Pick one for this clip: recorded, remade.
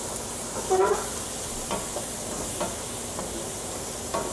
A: recorded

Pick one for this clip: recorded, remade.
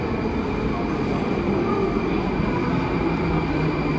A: recorded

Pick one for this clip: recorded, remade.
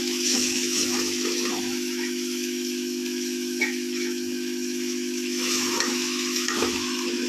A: remade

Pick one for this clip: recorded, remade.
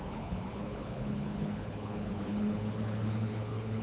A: remade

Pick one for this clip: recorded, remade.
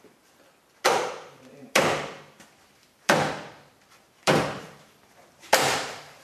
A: remade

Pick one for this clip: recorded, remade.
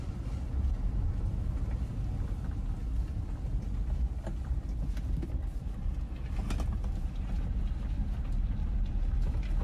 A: recorded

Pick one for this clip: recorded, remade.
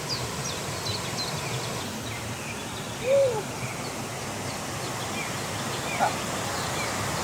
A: recorded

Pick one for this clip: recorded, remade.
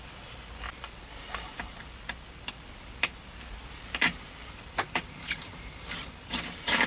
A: remade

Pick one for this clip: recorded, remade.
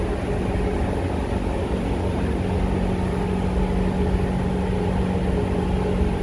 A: recorded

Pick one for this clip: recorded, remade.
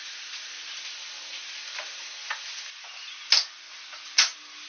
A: recorded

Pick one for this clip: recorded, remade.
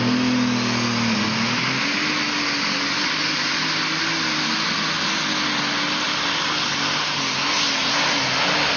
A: recorded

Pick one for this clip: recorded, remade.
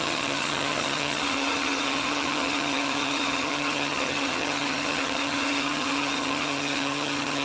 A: remade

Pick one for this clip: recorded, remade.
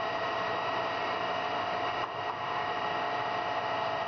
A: recorded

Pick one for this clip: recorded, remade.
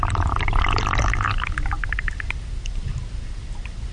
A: recorded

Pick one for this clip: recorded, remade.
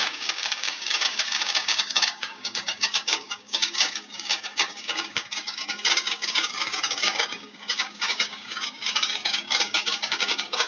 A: remade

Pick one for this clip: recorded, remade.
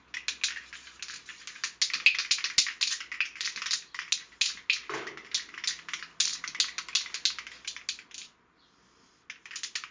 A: recorded